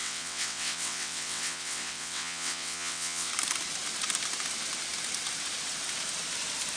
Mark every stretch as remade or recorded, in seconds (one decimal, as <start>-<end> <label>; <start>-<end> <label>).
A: 0.0-3.3 remade; 3.3-6.8 recorded